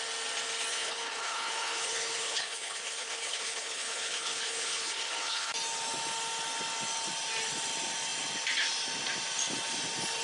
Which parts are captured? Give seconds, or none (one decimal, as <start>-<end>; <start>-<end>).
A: 0.0-0.7; 5.5-10.2